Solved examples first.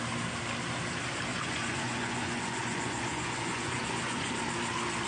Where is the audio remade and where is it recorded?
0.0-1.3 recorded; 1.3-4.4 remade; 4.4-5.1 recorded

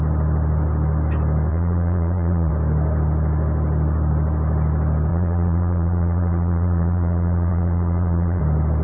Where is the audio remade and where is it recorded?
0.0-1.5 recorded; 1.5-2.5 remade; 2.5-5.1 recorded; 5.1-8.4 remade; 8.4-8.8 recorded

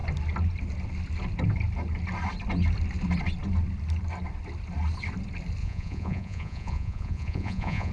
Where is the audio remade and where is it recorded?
0.0-5.6 recorded; 5.6-7.9 remade

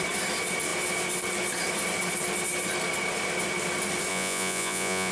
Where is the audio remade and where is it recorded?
0.0-4.1 recorded; 4.1-5.1 remade

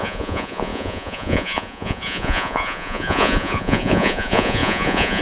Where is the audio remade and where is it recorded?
0.0-5.2 remade

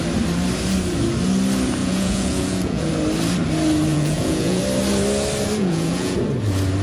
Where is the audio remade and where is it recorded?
0.0-1.8 recorded; 1.8-2.9 remade; 2.9-3.9 recorded; 3.9-4.6 remade; 4.6-5.6 recorded; 5.6-6.2 remade; 6.2-6.8 recorded

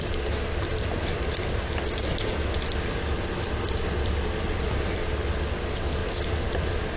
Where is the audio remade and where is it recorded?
0.0-7.0 recorded

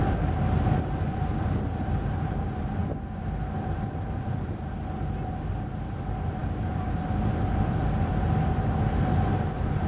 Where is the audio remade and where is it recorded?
0.0-9.9 recorded